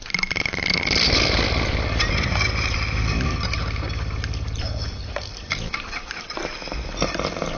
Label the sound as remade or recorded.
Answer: recorded